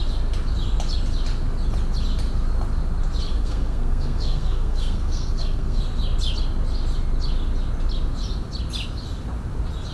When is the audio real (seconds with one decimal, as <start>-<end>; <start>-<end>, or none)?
0.0-3.3; 5.8-9.9